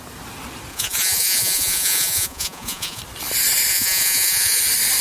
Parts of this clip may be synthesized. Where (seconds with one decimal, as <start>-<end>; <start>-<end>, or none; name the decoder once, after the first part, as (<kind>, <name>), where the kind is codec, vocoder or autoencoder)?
0.7-3.0 (vocoder, Vocos); 3.7-4.6